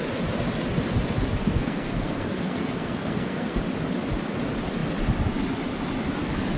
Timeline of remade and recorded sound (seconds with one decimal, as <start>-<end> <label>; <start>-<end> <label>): 0.0-1.4 recorded; 1.4-3.6 remade; 3.6-6.6 recorded